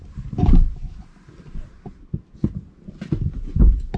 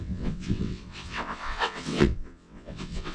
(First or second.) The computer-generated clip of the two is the second